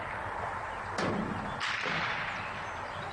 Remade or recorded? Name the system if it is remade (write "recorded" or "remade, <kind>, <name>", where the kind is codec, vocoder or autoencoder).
recorded